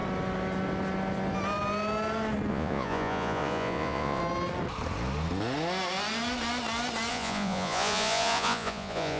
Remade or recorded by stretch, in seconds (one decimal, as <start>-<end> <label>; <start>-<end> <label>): 0.0-2.5 recorded; 2.5-4.2 remade; 4.2-7.1 recorded; 7.1-9.2 remade

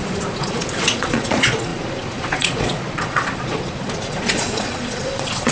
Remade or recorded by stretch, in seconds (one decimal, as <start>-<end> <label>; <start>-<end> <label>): 0.0-5.5 remade

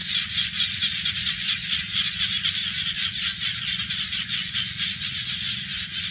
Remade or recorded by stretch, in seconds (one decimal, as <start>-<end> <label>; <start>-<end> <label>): 0.0-6.1 remade

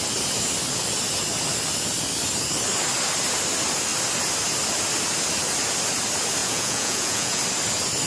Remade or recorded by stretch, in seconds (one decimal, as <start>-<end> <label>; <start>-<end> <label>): 0.0-6.4 recorded; 6.4-7.4 remade; 7.4-8.1 recorded

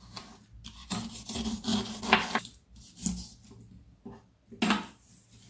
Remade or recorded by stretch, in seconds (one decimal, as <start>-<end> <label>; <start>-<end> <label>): 0.0-5.5 recorded